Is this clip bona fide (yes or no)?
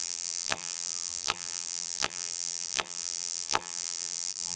no